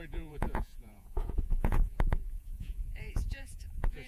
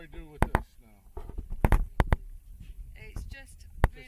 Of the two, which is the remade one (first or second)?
first